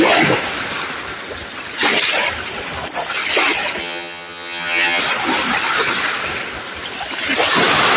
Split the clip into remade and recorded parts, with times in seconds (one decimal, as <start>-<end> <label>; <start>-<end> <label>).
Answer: 0.0-3.8 recorded; 3.8-5.0 remade; 5.0-8.0 recorded